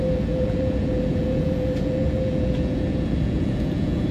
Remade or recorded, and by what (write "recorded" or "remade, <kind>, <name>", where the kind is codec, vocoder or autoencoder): remade, vocoder, Vocos